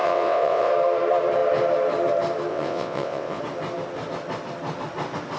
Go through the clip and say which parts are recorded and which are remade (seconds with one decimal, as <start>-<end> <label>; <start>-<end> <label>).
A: 0.0-0.7 remade; 0.7-2.5 recorded; 2.5-3.4 remade; 3.4-5.4 recorded